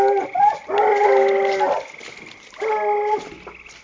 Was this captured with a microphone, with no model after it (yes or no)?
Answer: yes